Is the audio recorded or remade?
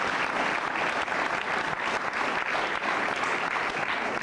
recorded